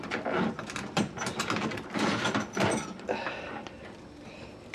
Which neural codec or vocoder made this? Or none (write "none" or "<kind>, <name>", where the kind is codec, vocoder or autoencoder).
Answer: vocoder, BigVGAN v2